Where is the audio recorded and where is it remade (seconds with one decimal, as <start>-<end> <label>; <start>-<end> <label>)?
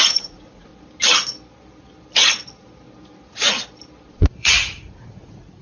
0.0-0.7 remade; 0.7-4.1 recorded; 4.1-5.6 remade